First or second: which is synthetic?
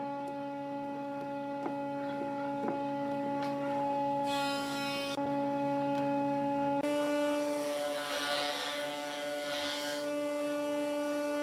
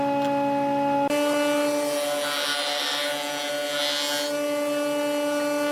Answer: first